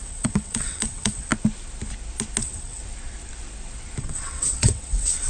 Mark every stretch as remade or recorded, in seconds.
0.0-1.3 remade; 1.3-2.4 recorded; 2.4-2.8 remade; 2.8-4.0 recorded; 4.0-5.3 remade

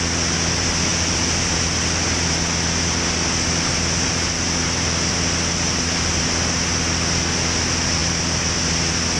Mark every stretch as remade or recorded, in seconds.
0.0-9.2 recorded

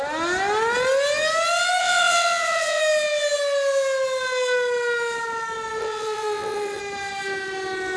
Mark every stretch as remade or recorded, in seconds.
0.0-1.8 recorded; 1.8-2.8 remade; 2.8-5.8 recorded; 5.8-6.8 remade; 6.8-8.0 recorded